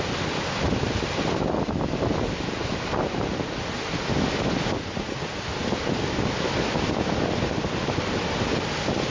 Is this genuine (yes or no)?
yes